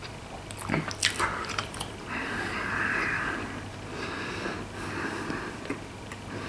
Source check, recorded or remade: recorded